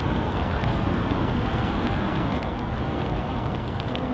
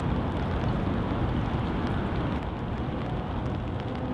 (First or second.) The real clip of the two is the second